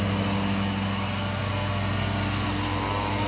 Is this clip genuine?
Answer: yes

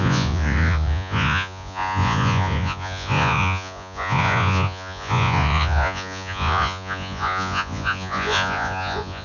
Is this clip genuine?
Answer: no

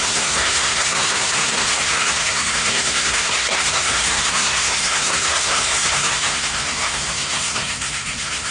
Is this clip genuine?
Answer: no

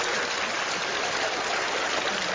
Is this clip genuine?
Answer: yes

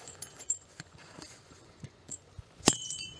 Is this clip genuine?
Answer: no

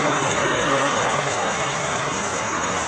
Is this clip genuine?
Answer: no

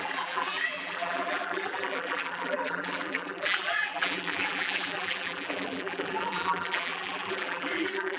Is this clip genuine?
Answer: no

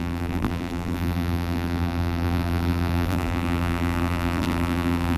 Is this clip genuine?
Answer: no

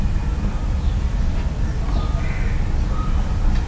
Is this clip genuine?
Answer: yes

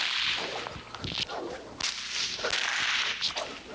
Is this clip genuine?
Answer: yes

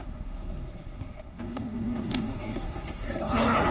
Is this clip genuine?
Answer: no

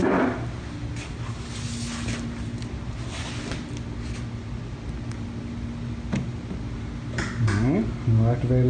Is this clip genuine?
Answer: yes